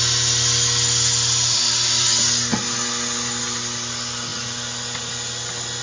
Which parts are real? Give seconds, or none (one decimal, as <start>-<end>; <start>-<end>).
0.0-5.8